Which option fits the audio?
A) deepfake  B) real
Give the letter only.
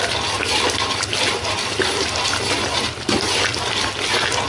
B